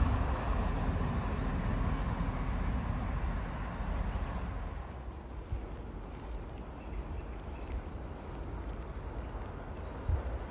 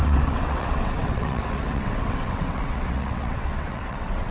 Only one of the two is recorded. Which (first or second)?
first